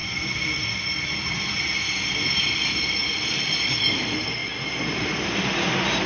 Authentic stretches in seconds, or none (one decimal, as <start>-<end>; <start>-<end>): 4.4-4.9